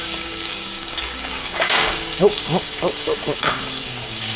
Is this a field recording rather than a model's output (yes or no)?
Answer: no